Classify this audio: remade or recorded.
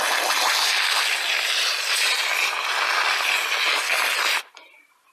recorded